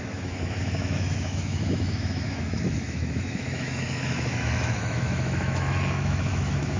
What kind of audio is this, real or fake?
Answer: fake